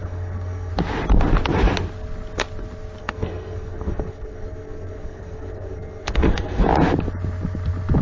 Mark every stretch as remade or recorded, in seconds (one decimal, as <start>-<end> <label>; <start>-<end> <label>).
0.0-0.7 remade; 0.7-3.0 recorded; 3.0-6.6 remade; 6.6-8.0 recorded